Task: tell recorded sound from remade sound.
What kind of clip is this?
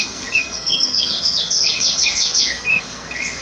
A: remade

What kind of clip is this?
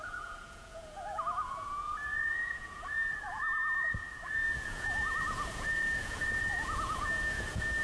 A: remade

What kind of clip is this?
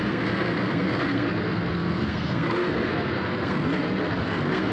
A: remade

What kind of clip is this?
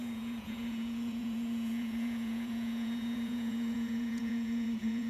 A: remade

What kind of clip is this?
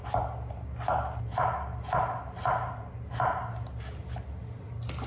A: recorded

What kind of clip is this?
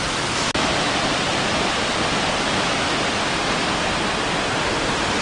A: recorded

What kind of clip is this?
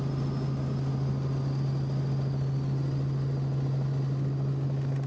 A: recorded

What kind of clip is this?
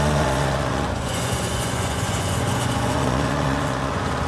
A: remade